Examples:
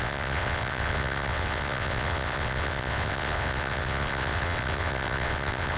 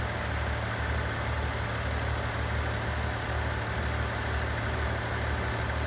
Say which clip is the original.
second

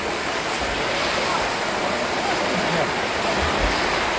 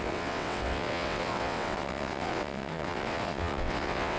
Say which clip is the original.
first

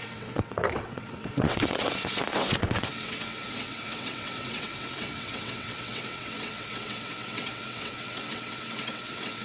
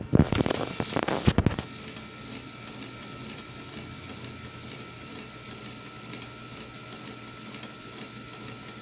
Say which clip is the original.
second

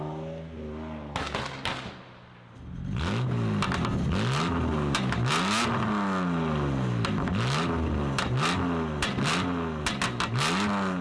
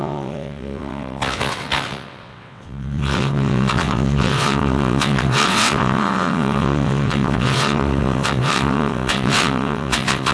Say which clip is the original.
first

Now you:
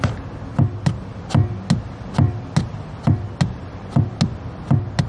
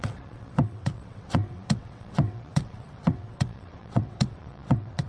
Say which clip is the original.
first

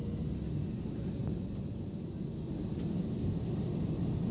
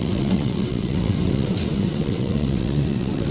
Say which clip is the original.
first